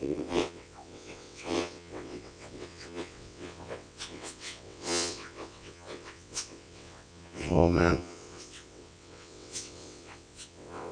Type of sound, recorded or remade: remade